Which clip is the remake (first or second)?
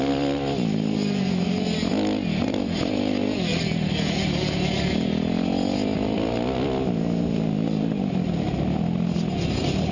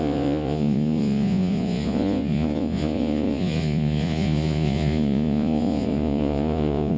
second